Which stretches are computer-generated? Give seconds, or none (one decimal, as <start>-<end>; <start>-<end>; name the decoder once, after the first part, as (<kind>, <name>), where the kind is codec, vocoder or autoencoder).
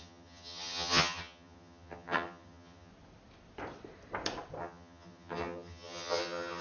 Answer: 0.0-2.9 (vocoder, HiFi-GAN); 4.6-6.6